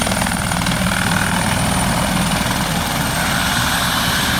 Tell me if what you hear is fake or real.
real